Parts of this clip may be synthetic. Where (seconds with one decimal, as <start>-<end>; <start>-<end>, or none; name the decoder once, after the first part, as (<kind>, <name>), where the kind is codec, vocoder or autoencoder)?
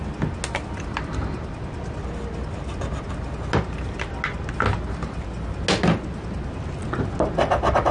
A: none